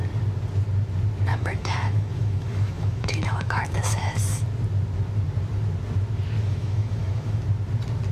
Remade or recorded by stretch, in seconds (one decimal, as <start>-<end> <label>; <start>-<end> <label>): 0.0-1.3 recorded; 1.3-4.2 remade; 4.2-6.4 recorded; 6.4-7.4 remade; 7.4-8.1 recorded